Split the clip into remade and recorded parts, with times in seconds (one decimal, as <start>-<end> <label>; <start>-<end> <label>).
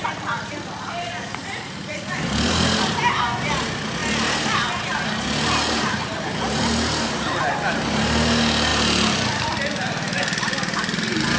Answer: 0.0-1.2 recorded; 1.2-2.2 remade; 2.2-11.4 recorded